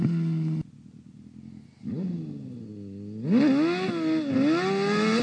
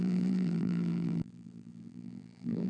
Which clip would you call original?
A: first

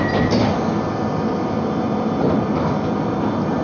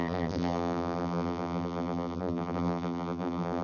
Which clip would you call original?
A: first